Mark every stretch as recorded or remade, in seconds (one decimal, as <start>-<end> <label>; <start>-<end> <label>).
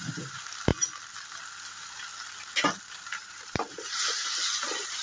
0.0-0.7 remade; 0.7-1.6 recorded; 1.6-2.1 remade; 2.1-2.9 recorded; 2.9-5.0 remade